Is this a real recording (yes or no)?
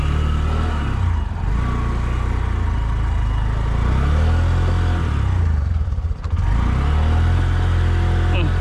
yes